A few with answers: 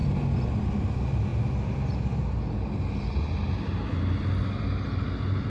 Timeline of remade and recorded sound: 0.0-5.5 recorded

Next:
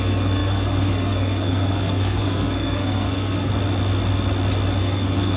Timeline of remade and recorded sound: 0.0-3.5 remade; 3.5-4.8 recorded; 4.8-5.4 remade

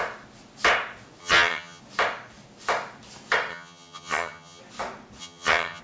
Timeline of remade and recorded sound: 0.0-1.2 recorded; 1.2-1.8 remade; 1.8-3.5 recorded; 3.5-4.6 remade; 4.6-5.2 recorded; 5.2-5.8 remade

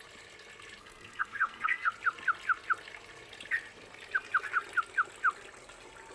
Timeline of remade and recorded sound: 0.0-0.8 recorded; 0.8-1.9 remade; 1.9-6.1 recorded

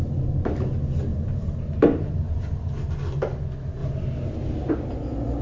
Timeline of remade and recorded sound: 0.0-1.1 recorded; 1.1-2.5 remade; 2.5-5.4 recorded

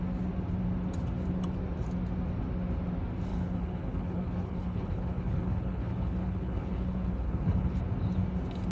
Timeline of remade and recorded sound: 0.0-3.3 recorded; 3.3-7.8 remade; 7.8-8.7 recorded